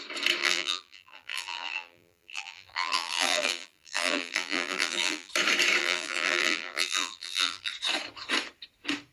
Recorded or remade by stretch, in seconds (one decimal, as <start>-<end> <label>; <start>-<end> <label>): 0.0-0.4 recorded; 0.4-5.3 remade; 5.3-5.8 recorded; 5.8-7.7 remade; 7.7-9.1 recorded

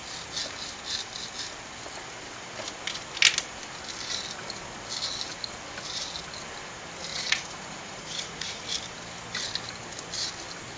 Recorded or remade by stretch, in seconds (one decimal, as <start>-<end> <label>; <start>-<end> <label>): 0.0-7.1 recorded; 7.1-8.6 remade; 8.6-10.8 recorded

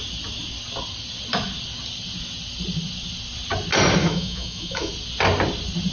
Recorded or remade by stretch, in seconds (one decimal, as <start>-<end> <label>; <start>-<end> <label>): 0.0-4.0 recorded; 4.0-4.9 remade; 4.9-5.9 recorded

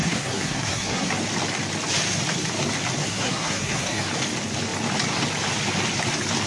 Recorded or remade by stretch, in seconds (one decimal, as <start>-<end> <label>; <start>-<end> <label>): 0.0-1.1 remade; 1.1-3.0 recorded; 3.0-4.1 remade; 4.1-6.5 recorded

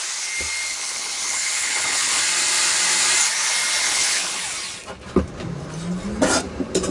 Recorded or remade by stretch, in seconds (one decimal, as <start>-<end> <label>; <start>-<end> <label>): 0.0-0.7 recorded; 0.7-2.2 remade; 2.2-3.8 recorded; 3.8-4.4 remade; 4.4-6.9 recorded

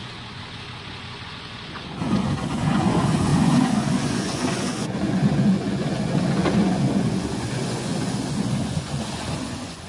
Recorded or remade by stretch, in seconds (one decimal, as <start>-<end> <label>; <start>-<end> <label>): 0.0-9.9 remade